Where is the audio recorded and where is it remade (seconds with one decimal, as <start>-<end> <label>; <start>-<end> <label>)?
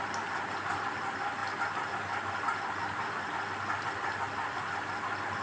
0.0-5.4 recorded